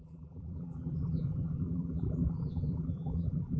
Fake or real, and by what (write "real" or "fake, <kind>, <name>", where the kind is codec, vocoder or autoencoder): fake, vocoder, BigVGAN v2